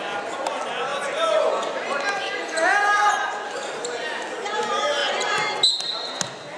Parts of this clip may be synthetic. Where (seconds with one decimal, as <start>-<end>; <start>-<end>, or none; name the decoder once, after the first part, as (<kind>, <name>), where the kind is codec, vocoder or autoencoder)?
none